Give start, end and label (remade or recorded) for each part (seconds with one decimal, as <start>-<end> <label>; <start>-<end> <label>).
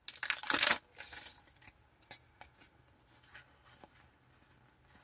0.0-5.0 recorded